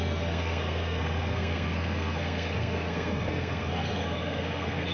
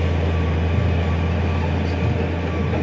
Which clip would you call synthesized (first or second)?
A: first